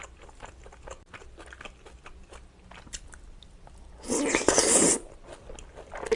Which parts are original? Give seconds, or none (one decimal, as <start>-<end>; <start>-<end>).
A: 0.0-6.2